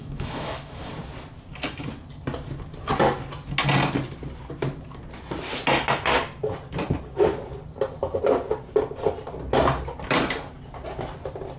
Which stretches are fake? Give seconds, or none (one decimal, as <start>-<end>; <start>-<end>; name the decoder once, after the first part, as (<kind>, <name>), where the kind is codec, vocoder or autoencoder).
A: 0.0-0.9 (autoencoder, DAC-VAE)